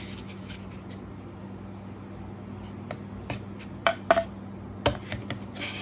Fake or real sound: real